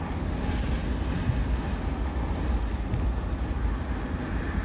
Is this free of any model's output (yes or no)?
yes